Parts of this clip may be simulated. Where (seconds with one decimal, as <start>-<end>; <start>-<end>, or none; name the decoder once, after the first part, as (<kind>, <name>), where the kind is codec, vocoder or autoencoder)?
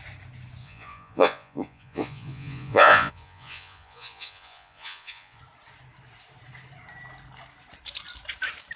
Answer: 0.6-5.4 (vocoder, Vocos)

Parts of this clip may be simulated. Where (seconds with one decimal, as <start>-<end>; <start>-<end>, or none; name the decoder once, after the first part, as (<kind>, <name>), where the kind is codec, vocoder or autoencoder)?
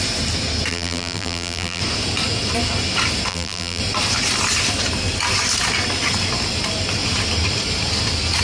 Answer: 0.7-1.8 (vocoder, BigVGAN v2); 3.3-3.8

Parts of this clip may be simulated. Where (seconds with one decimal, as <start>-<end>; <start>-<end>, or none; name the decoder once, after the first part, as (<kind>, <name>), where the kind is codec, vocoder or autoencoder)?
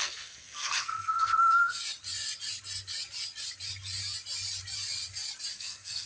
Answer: 0.0-1.8 (codec, SNAC); 5.5-6.1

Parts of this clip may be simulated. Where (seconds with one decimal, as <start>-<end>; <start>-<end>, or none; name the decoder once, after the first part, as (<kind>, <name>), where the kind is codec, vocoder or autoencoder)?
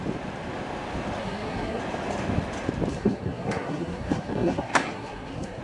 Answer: 1.2-1.8 (codec, SNAC); 2.9-5.6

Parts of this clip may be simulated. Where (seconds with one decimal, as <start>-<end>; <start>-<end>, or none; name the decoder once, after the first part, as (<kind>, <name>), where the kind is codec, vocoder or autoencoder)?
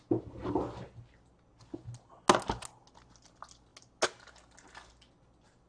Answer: none